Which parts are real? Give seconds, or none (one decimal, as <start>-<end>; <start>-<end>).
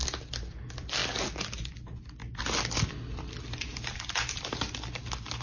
0.0-5.4